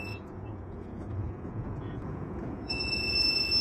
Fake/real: fake